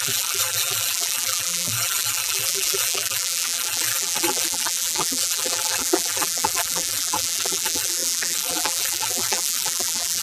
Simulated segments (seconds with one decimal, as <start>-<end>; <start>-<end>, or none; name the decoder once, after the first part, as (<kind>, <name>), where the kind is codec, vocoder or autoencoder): 0.0-10.2 (vocoder, BigVGAN v2)